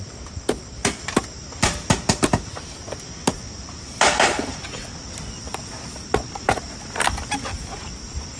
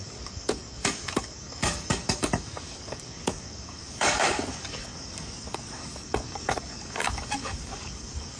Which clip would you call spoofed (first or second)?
second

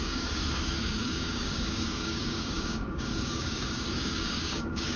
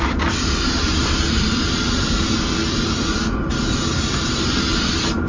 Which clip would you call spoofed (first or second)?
first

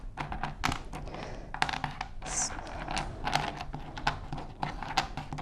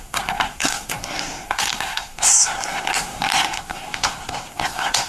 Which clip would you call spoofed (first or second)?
second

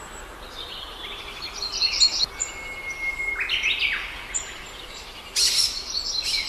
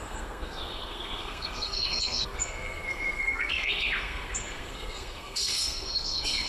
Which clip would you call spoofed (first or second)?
second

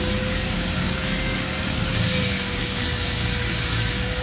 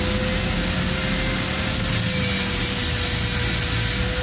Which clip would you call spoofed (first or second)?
first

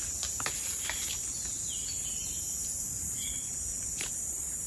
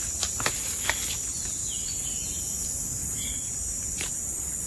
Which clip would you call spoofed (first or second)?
first